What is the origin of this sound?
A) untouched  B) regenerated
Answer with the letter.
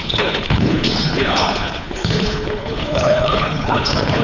B